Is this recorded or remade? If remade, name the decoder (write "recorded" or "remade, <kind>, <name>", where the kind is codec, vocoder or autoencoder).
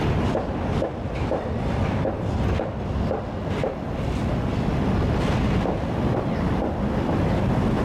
recorded